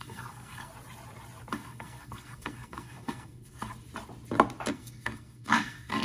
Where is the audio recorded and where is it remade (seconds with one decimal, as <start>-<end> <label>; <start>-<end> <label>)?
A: 0.0-0.7 remade; 0.7-1.5 recorded; 1.5-3.7 remade; 3.7-4.7 recorded; 4.7-6.0 remade